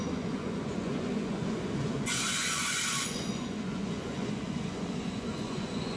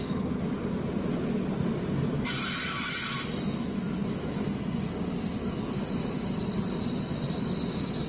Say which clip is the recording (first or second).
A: second